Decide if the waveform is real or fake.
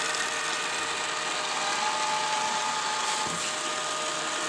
real